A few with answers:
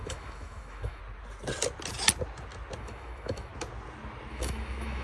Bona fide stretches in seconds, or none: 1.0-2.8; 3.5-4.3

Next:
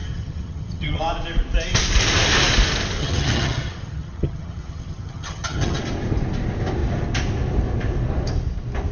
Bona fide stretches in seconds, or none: 1.0-3.0; 5.8-8.9

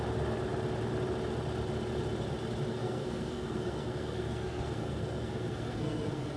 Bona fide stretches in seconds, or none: 0.0-2.7

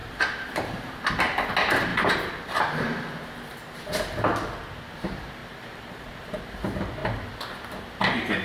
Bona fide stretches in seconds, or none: 1.5-1.9; 3.0-5.4; 6.4-8.4

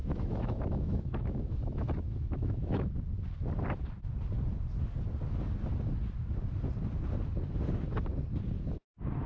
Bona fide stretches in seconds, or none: 2.9-9.3

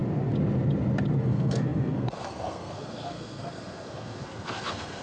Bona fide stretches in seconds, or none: 0.0-1.2

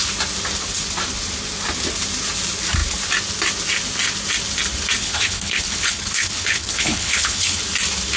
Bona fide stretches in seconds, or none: 0.0-5.0; 7.6-8.2

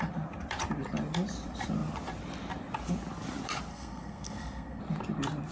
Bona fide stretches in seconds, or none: 0.0-3.7; 4.8-5.5